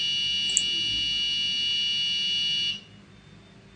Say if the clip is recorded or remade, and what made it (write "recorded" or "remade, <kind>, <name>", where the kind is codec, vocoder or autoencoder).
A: recorded